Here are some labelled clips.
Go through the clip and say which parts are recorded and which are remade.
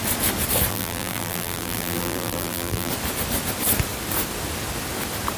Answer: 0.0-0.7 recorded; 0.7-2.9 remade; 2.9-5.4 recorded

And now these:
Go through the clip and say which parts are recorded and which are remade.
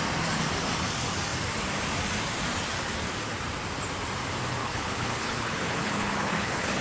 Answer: 0.0-4.6 recorded; 4.6-6.8 remade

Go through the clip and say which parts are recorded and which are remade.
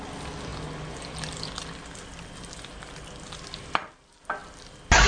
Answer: 0.0-5.1 recorded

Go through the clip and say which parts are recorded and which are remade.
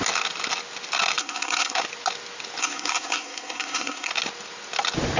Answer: 0.0-1.2 recorded; 1.2-1.8 remade; 1.8-2.6 recorded; 2.6-4.1 remade; 4.1-5.2 recorded